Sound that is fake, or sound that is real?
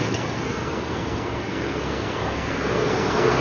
fake